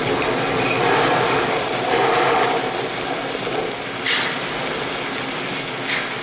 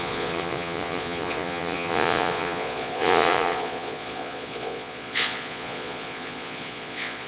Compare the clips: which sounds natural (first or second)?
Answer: first